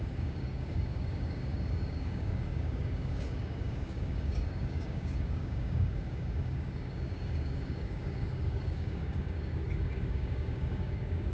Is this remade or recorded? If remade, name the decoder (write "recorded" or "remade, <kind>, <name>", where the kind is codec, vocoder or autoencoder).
remade, codec, DAC